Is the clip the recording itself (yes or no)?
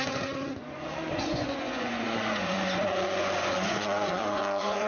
no